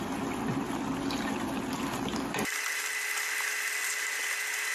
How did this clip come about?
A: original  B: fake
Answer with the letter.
A